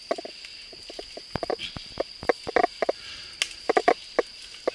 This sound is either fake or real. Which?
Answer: real